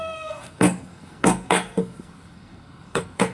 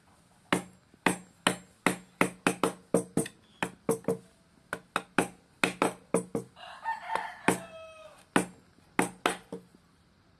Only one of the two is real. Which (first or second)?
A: second